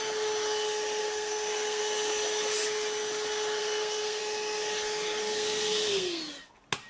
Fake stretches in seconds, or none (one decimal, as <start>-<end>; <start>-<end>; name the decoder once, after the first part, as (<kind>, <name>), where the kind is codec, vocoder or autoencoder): 1.0-1.8 (codec, SNAC); 3.6-4.2; 5.2-6.2